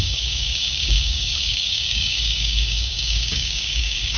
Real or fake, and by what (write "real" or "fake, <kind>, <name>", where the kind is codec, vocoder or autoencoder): fake, codec, DAC